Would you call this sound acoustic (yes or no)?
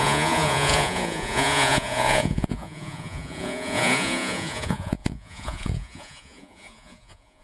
no